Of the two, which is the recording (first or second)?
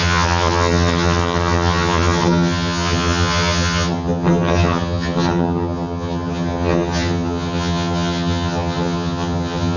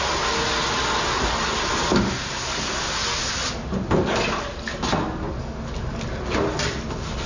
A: second